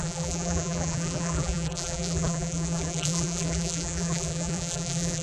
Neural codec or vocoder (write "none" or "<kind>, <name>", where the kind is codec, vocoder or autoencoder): vocoder, BigVGAN v2